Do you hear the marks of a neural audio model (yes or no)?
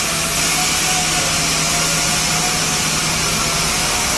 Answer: no